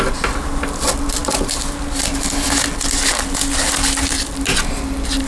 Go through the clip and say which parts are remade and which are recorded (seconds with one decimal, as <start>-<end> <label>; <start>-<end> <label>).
0.0-5.3 recorded